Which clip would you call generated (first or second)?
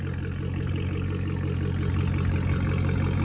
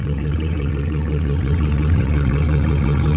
second